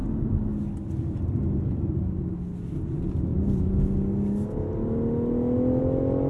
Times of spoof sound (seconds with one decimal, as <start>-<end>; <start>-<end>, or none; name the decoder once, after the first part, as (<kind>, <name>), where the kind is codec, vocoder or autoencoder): none